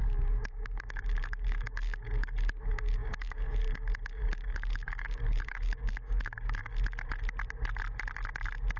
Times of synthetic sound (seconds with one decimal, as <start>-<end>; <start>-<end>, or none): 0.0-6.7